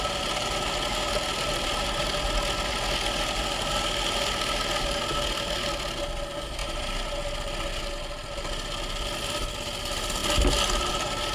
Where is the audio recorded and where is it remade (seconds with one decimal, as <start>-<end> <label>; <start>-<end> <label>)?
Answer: 0.0-11.3 recorded